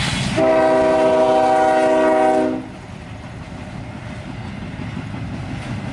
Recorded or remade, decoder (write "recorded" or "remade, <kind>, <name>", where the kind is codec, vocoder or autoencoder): recorded